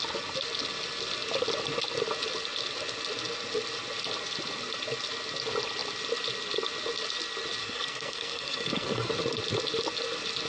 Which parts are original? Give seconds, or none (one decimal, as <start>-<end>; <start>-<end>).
0.0-7.6; 9.1-10.5